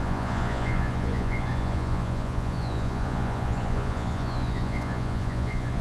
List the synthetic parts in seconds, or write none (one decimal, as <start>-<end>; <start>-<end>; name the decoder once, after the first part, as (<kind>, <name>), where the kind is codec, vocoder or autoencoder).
0.0-5.8 (vocoder, Vocos)